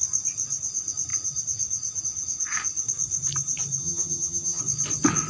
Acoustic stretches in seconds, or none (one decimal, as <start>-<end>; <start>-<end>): 0.0-3.8; 4.6-5.3